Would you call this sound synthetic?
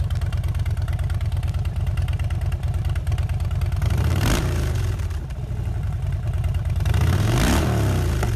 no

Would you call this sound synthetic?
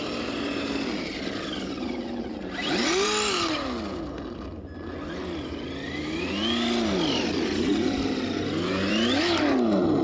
no